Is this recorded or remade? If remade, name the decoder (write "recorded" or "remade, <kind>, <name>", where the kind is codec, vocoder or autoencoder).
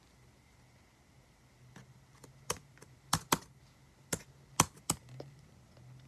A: recorded